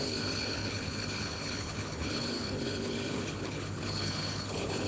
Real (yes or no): no